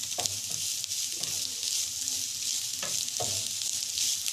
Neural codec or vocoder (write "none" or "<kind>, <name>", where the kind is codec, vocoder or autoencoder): none